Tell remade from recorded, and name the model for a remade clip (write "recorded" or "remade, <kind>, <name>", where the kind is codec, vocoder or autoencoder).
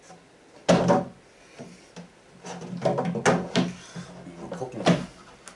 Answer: recorded